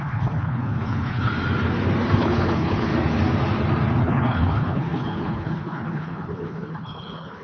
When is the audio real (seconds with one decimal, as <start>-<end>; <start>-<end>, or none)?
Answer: 1.3-2.2; 2.9-4.0